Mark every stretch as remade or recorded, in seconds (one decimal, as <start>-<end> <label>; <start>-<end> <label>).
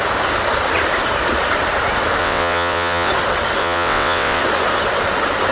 0.0-2.2 recorded; 2.2-3.1 remade; 3.1-3.6 recorded; 3.6-4.4 remade; 4.4-5.5 recorded